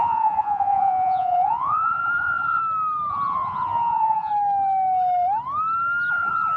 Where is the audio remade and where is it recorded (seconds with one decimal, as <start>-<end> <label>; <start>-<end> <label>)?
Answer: 0.0-2.6 remade; 2.6-3.1 recorded; 3.1-4.3 remade; 4.3-6.1 recorded; 6.1-6.6 remade